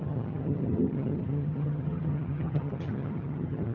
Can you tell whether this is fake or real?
fake